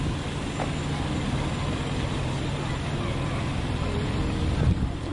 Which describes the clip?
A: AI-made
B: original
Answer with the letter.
B